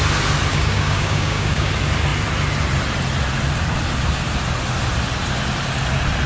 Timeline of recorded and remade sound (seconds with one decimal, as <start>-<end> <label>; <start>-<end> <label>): 0.0-0.5 recorded; 0.5-1.7 remade; 1.7-6.3 recorded